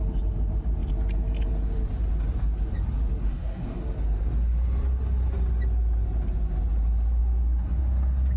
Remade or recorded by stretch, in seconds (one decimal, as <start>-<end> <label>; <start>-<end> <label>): 0.0-3.2 recorded; 3.2-3.8 remade; 3.8-8.4 recorded